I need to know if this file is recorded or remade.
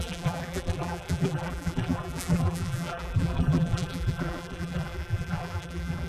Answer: remade